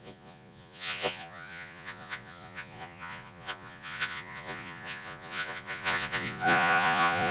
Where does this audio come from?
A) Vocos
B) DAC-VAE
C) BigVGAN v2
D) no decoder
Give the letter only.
A